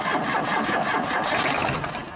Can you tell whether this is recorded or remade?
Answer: recorded